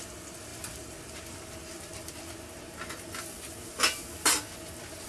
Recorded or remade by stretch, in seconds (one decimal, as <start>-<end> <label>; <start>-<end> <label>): 0.0-5.1 recorded